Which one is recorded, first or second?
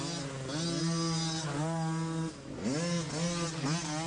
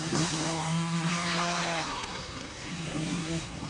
first